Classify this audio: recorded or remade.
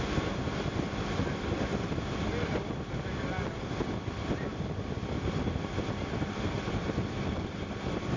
recorded